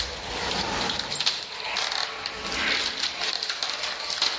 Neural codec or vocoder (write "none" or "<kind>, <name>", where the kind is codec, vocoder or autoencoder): none